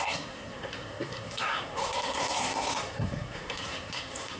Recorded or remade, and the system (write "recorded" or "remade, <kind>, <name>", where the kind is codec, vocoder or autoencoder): remade, codec, SNAC